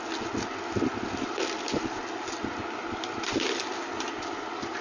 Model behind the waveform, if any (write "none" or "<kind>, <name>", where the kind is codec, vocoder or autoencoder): none